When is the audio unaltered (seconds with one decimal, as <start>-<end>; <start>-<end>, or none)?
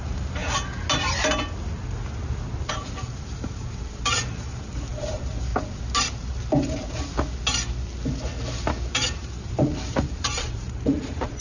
0.4-2.7; 5.5-8.9